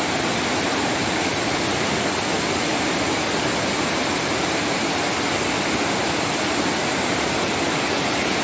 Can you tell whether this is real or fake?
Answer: real